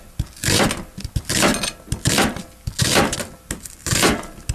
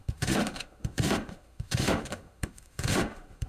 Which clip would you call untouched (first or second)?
first